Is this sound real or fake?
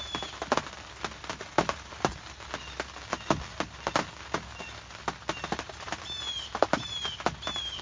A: real